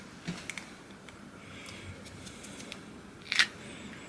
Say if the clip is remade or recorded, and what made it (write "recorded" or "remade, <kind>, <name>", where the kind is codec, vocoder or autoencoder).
recorded